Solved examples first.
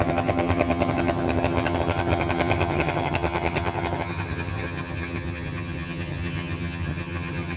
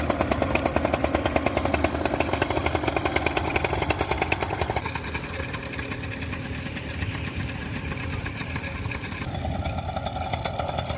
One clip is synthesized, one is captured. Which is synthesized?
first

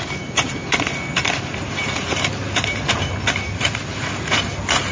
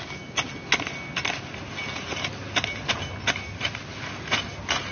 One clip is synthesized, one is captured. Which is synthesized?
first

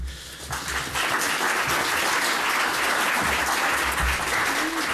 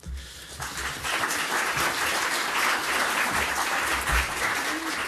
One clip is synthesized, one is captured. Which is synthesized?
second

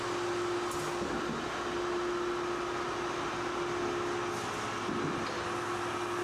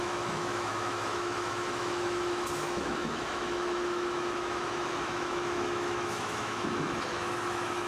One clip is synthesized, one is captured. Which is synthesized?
second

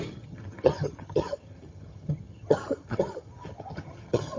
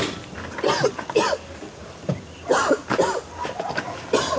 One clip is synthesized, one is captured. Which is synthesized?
first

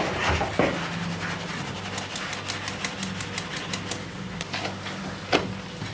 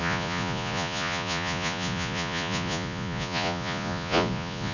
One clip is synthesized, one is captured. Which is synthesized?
second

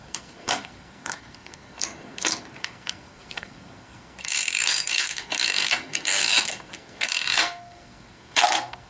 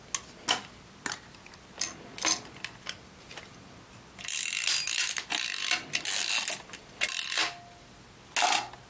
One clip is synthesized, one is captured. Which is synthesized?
first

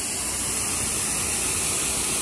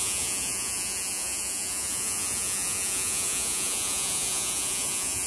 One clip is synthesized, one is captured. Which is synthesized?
second